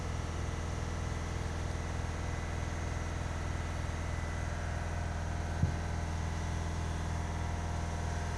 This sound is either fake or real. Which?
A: real